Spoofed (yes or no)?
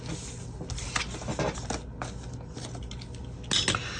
no